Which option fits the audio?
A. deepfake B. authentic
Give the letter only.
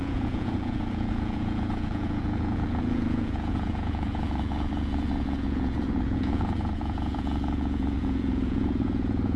A